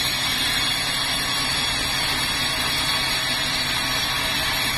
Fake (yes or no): no